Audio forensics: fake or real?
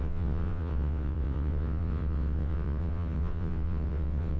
fake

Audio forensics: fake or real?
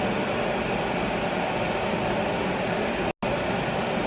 real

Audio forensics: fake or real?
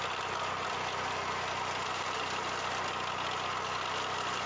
real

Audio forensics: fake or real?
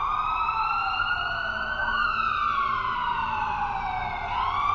real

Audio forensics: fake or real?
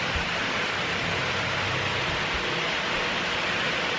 real